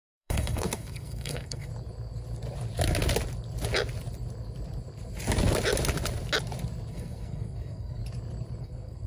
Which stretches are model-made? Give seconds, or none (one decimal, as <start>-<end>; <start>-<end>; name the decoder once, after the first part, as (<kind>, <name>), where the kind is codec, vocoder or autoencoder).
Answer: 0.0-1.7 (codec, SNAC); 6.9-8.0; 8.6-9.1